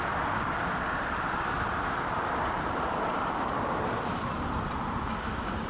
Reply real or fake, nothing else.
fake